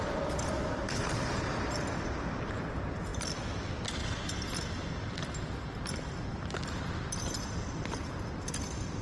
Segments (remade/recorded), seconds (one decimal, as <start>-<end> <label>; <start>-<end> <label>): 0.0-9.0 recorded